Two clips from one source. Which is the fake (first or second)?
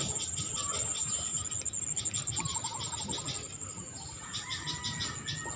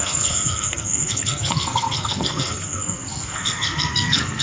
second